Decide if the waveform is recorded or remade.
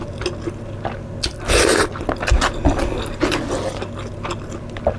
recorded